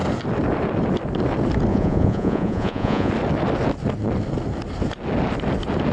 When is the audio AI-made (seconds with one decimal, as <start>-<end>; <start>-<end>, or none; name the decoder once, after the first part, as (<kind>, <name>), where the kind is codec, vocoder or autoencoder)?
1.7-3.1 (vocoder, Vocos)